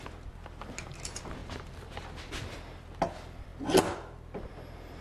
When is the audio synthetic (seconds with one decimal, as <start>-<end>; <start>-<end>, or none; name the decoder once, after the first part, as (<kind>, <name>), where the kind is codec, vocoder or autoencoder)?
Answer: none